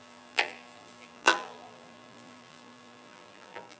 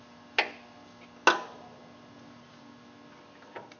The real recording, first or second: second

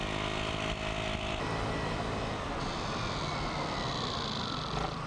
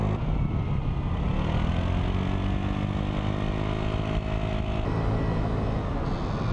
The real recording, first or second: second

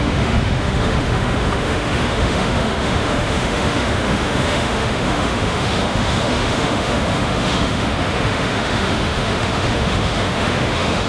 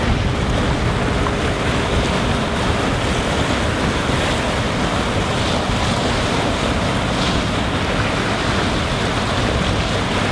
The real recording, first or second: second